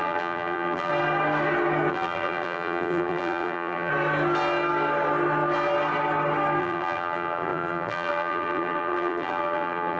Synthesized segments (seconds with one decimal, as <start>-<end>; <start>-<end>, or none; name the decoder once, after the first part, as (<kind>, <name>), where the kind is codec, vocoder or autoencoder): 0.0-0.9 (vocoder, BigVGAN v2); 1.9-3.9; 6.6-10.0